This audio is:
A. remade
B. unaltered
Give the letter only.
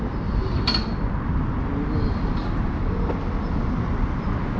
B